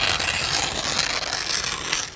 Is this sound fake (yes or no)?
no